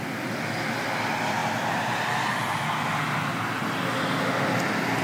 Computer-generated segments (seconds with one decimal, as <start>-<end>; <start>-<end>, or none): none